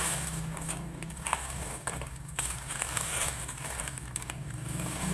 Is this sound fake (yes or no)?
yes